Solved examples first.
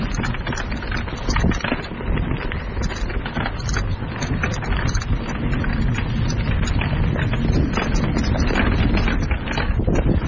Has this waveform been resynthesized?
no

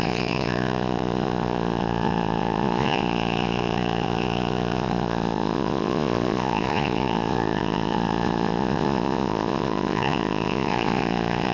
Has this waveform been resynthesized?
yes